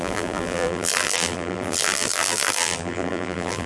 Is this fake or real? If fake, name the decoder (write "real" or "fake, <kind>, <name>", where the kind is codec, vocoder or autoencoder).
fake, vocoder, BigVGAN v2